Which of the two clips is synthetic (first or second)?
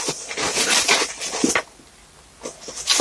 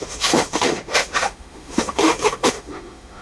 second